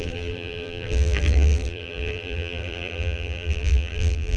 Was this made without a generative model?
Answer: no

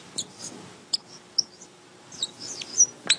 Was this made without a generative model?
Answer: yes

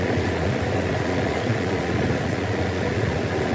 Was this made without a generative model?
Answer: no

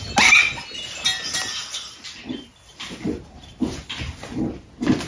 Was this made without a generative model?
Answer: yes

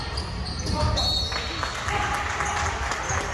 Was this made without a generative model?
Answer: yes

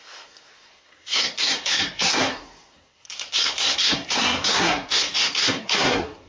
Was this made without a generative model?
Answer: no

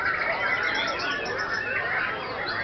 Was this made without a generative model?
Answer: yes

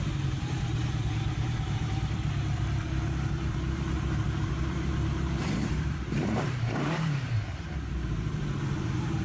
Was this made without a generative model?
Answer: no